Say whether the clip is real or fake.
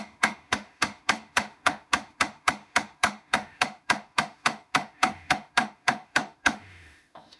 fake